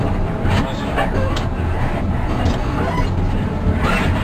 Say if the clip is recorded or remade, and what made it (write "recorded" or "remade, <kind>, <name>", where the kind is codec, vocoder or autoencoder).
recorded